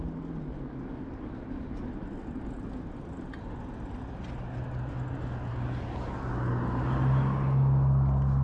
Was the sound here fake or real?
real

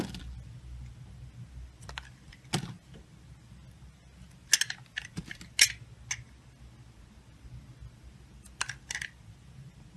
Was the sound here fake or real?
real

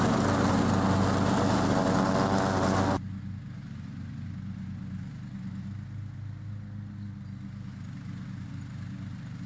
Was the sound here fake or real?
real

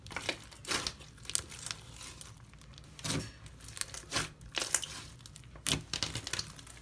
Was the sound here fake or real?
real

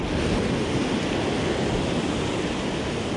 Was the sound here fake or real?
real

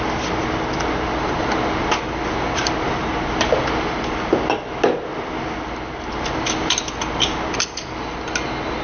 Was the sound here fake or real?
real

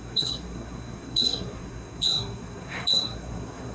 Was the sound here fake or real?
fake